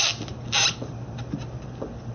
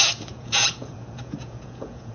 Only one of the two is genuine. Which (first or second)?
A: first